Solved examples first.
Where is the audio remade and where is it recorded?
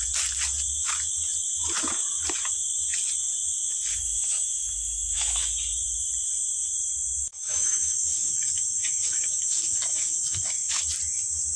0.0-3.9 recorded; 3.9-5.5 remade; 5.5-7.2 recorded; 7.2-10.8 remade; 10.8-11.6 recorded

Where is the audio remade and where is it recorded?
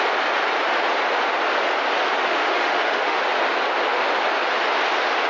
0.0-2.3 recorded; 2.3-3.2 remade; 3.2-5.3 recorded